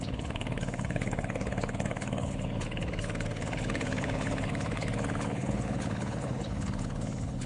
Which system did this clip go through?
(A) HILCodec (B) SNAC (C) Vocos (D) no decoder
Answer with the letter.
A